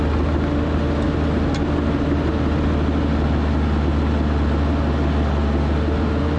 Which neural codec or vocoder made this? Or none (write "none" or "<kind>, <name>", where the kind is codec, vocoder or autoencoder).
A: none